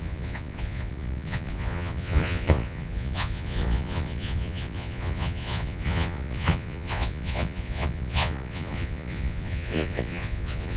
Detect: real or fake fake